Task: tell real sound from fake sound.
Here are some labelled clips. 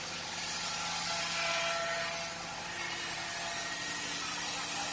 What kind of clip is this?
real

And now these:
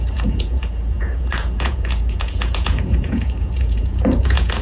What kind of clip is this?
fake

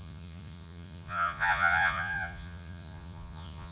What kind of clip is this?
fake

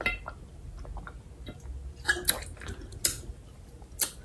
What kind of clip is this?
real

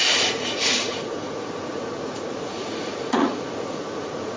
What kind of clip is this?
fake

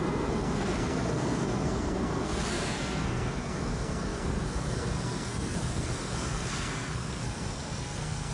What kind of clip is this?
fake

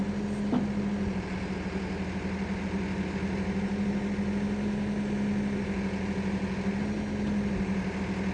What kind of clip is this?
real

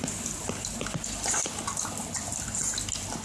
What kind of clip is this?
real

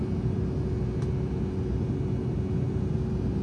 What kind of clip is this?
real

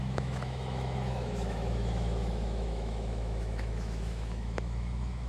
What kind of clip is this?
fake